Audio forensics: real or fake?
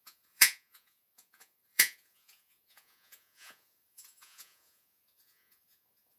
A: fake